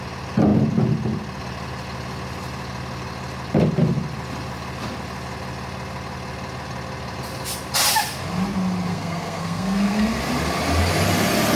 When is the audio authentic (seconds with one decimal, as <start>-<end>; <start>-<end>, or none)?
0.0-8.9; 10.2-11.6